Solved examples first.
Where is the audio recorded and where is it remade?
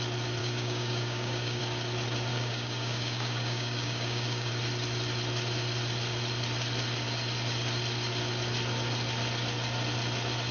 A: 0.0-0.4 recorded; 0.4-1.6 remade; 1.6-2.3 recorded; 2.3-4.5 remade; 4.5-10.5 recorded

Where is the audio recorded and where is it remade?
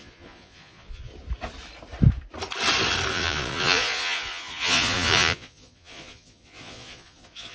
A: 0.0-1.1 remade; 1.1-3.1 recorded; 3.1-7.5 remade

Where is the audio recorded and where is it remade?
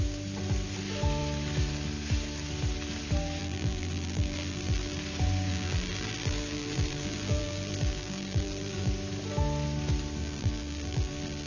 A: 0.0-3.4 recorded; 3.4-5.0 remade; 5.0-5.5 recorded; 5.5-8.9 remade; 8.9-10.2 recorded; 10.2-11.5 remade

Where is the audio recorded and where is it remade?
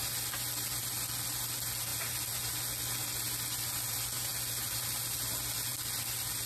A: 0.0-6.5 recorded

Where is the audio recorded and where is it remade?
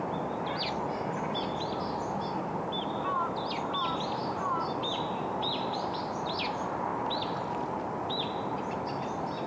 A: 0.0-9.5 recorded